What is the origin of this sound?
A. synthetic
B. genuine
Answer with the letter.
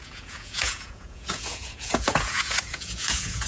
A